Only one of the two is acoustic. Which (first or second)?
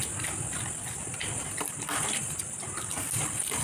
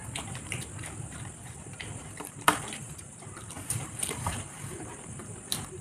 first